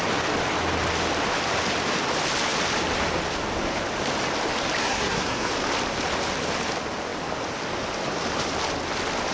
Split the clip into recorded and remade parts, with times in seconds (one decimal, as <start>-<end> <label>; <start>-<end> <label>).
0.0-4.8 recorded; 4.8-5.5 remade; 5.5-9.3 recorded